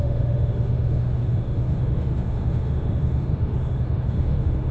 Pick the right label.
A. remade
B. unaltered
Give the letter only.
A